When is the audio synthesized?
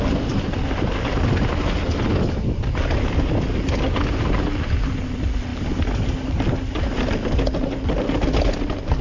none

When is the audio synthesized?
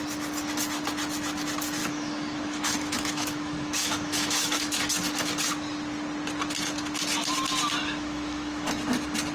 1.8-4.8 (autoencoder, DAC-VAE); 7.8-8.7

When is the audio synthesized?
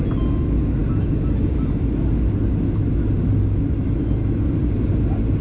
none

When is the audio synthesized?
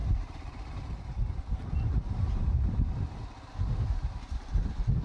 0.0-2.7 (vocoder, BigVGAN v2)